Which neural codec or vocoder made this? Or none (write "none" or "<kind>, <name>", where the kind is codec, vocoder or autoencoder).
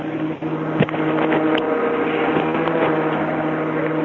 none